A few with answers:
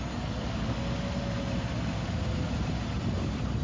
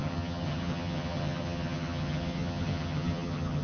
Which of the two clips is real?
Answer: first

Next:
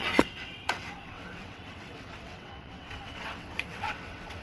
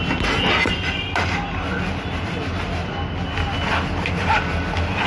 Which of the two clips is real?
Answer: second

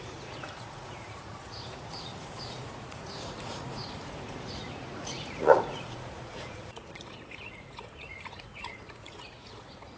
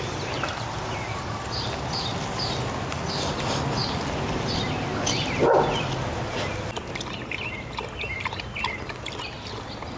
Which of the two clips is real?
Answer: second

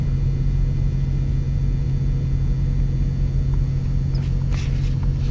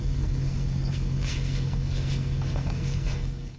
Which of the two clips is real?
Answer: first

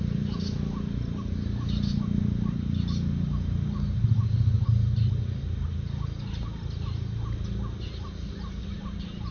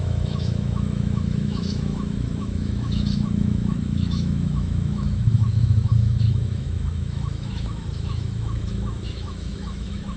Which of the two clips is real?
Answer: first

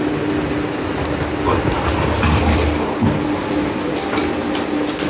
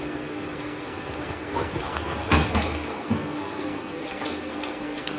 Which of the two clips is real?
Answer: first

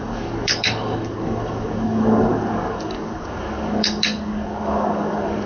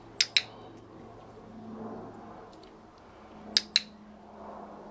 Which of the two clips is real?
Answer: second